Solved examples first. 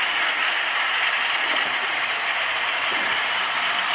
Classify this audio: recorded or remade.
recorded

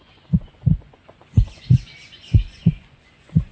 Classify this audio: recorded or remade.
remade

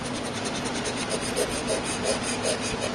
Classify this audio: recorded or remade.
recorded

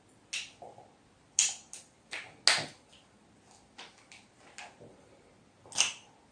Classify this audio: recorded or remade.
recorded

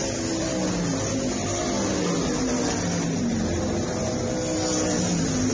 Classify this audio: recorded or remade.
recorded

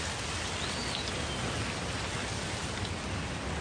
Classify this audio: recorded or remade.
recorded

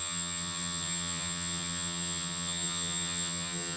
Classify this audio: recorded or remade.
remade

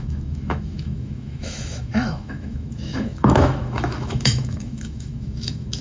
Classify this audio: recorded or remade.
remade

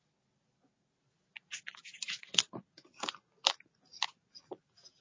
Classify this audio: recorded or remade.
recorded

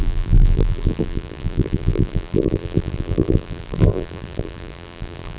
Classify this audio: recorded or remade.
remade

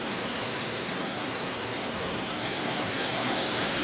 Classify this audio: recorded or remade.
remade